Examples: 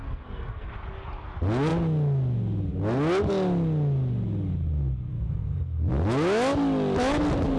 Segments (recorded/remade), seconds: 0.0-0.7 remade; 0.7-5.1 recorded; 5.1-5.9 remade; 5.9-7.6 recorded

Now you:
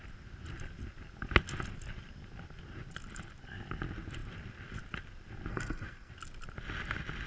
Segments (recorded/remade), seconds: 0.0-5.5 recorded; 5.5-6.1 remade; 6.1-7.3 recorded

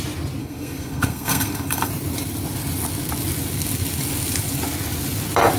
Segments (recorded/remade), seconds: 0.0-0.4 recorded; 0.4-1.9 remade; 1.9-5.6 recorded

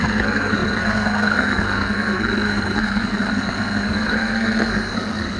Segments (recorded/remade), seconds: 0.0-5.4 remade

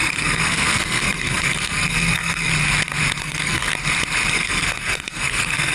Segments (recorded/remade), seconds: 0.0-2.5 remade; 2.5-3.2 recorded; 3.2-3.7 remade; 3.7-4.3 recorded; 4.3-5.7 remade

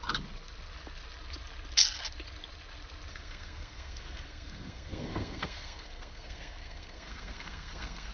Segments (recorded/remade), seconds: 0.0-3.1 recorded; 3.1-8.1 remade

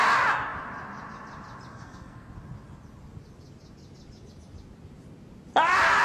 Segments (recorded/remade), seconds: 0.0-1.7 recorded; 1.7-2.3 remade; 2.3-6.0 recorded